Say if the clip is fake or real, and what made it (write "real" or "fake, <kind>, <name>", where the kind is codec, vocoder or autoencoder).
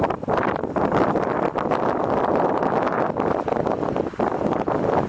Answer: fake, vocoder, BigVGAN v2